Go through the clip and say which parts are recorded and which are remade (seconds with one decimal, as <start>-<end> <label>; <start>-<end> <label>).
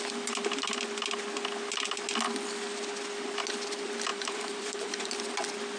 0.0-4.1 recorded; 4.1-5.1 remade; 5.1-5.8 recorded